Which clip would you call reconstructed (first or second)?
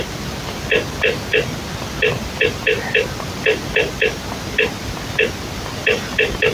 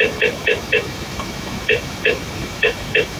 second